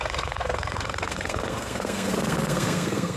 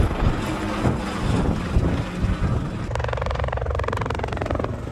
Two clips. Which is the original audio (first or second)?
second